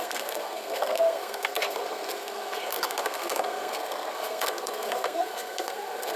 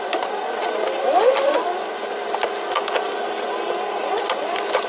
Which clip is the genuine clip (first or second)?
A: second